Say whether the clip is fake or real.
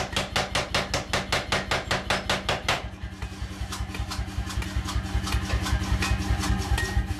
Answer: real